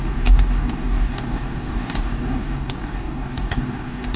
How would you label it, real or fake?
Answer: fake